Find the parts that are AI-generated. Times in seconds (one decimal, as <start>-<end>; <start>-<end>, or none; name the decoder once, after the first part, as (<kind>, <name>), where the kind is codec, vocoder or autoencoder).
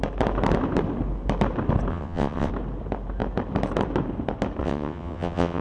1.9-2.5 (vocoder, WaveNeXt); 4.6-5.6